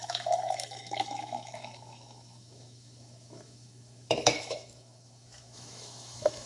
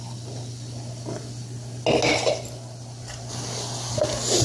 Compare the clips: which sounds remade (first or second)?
first